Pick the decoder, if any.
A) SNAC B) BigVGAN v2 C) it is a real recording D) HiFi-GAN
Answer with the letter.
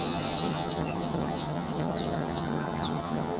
D